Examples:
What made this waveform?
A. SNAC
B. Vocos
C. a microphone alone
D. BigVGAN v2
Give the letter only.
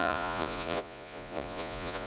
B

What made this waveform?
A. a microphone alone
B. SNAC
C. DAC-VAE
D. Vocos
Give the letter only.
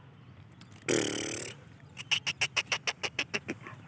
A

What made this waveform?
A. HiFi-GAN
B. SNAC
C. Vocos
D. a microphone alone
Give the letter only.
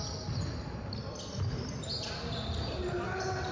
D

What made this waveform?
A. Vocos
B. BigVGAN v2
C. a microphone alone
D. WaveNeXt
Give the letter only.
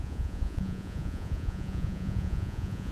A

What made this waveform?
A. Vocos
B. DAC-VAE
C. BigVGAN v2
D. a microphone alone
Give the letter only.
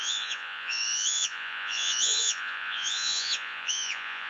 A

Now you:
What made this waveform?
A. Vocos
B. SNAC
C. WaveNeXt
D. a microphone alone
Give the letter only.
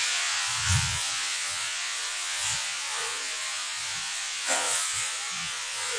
A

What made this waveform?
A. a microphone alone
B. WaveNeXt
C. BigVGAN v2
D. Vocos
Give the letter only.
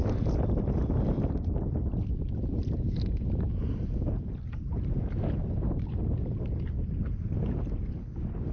A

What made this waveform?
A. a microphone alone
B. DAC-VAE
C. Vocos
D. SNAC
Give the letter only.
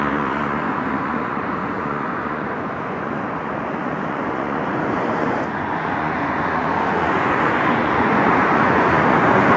C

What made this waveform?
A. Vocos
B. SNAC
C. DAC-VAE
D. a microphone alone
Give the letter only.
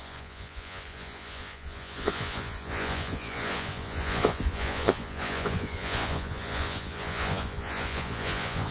A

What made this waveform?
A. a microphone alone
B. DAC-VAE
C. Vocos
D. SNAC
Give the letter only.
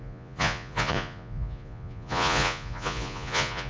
C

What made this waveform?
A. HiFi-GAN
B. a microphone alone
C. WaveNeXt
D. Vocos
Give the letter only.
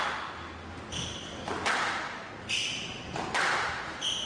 B